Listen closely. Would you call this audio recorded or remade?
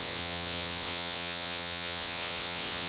remade